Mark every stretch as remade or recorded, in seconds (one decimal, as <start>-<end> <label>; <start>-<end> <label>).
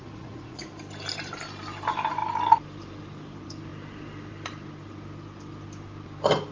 0.0-0.7 remade; 0.7-6.5 recorded